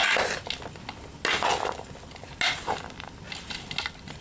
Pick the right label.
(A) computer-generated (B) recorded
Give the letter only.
B